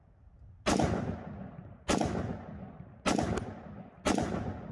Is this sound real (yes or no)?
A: yes